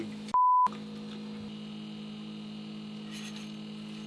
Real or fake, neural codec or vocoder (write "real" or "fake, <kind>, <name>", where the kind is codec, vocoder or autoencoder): real